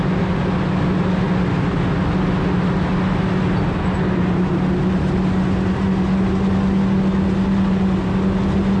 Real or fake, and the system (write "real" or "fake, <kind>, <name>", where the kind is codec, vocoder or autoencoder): real